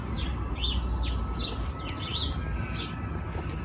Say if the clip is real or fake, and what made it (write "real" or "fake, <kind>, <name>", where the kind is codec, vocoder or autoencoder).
real